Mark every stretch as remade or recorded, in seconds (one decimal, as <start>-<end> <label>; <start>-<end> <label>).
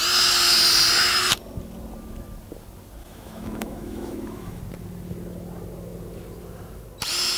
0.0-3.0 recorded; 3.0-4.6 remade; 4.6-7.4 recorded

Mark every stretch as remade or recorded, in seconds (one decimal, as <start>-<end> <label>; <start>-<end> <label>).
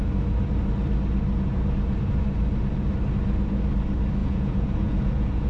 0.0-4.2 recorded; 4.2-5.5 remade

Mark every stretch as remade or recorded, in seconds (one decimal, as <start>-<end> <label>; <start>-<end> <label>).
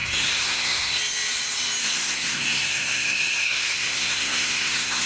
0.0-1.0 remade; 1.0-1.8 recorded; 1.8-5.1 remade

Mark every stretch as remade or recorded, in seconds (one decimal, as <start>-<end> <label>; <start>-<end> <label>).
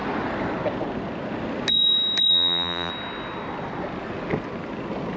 0.0-2.3 recorded; 2.3-2.9 remade; 2.9-5.2 recorded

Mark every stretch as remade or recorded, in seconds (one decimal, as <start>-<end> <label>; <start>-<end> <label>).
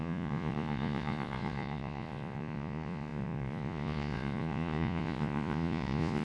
0.0-6.2 remade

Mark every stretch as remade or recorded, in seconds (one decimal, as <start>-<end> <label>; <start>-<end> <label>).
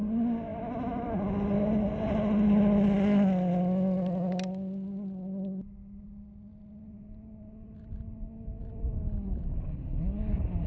0.0-10.7 recorded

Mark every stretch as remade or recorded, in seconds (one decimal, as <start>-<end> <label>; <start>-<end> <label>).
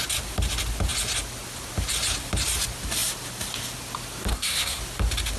0.0-4.3 recorded; 4.3-4.8 remade; 4.8-5.4 recorded